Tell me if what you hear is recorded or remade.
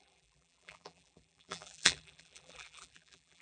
remade